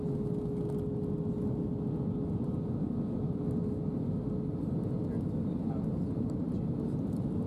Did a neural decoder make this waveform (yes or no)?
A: no